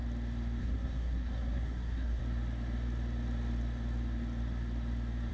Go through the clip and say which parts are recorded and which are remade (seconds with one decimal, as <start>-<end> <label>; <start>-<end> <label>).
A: 0.0-0.6 recorded; 0.6-2.2 remade; 2.2-5.3 recorded

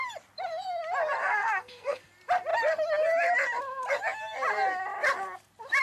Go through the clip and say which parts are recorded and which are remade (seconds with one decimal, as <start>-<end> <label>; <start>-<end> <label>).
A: 0.0-1.2 recorded; 1.2-2.1 remade; 2.1-5.8 recorded

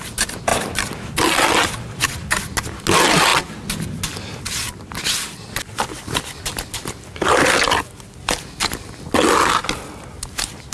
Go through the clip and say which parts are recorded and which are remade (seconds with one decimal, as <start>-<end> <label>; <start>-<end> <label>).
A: 0.0-10.7 recorded

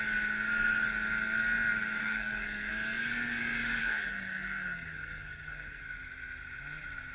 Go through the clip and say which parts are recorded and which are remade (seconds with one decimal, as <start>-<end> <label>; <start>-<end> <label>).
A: 0.0-2.0 recorded; 2.0-2.7 remade; 2.7-3.8 recorded; 3.8-5.8 remade; 5.8-7.1 recorded